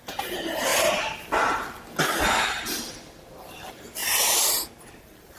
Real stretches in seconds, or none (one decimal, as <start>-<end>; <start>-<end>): 0.0-5.4